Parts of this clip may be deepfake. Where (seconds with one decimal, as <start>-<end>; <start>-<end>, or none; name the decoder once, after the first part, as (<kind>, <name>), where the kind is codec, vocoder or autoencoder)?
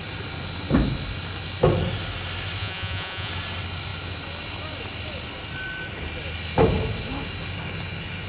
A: 2.6-3.3 (vocoder, Vocos)